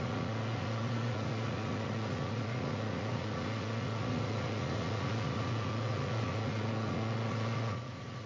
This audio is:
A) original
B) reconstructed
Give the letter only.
B